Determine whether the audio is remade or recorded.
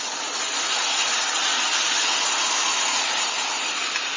recorded